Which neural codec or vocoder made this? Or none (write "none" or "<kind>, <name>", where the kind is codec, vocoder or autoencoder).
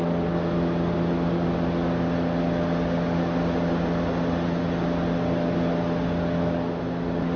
none